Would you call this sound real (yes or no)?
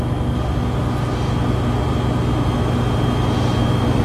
yes